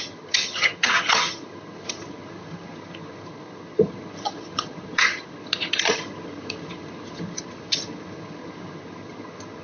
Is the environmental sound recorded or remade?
remade